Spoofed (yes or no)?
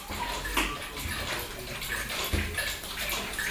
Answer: no